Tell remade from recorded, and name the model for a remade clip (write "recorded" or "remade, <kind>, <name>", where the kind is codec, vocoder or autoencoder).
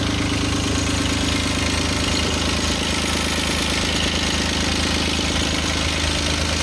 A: recorded